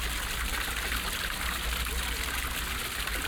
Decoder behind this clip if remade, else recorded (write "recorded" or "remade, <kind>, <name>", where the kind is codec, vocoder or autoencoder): recorded